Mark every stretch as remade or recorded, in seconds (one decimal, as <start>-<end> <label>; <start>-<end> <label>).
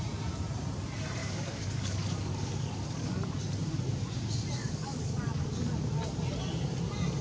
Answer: 0.0-1.2 recorded; 1.2-3.3 remade; 3.3-4.6 recorded; 4.6-5.7 remade; 5.7-7.2 recorded